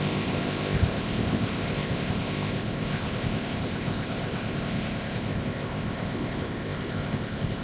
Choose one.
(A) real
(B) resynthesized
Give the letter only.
B